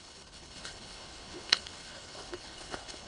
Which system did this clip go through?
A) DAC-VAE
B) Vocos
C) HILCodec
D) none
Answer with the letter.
C